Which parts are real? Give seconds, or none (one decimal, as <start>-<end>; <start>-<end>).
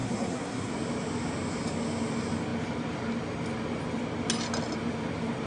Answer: 0.7-5.5